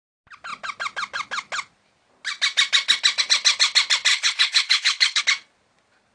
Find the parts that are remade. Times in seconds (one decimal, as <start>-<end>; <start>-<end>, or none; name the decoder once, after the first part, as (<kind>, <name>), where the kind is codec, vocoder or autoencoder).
4.1-5.2 (codec, HILCodec)